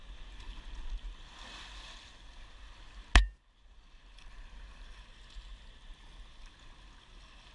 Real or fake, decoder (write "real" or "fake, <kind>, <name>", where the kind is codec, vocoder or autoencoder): real